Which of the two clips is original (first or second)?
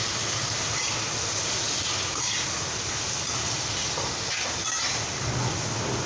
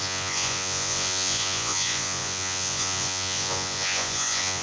first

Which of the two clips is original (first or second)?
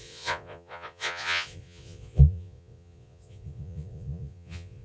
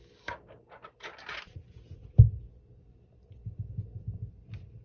second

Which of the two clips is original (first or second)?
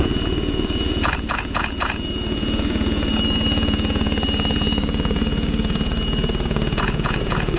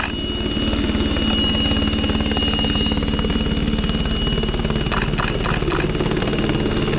second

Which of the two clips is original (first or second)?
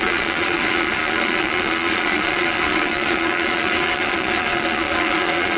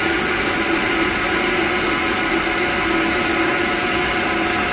second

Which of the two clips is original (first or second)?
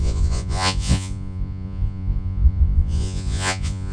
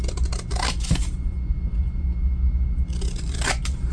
second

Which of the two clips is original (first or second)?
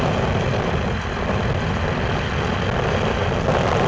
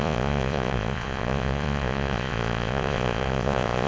first